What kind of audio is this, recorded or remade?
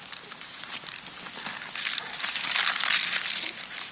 recorded